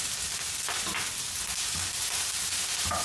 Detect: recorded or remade recorded